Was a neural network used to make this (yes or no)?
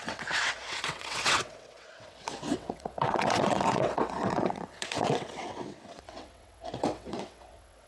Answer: yes